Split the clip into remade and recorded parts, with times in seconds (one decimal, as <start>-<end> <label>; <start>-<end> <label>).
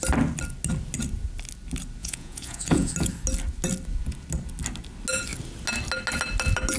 0.0-2.0 recorded; 2.0-2.9 remade; 2.9-6.8 recorded